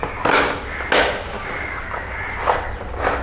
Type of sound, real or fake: real